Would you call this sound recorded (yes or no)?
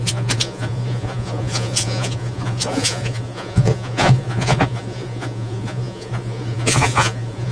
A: no